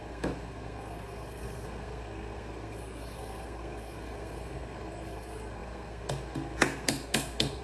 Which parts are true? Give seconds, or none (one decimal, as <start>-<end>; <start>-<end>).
none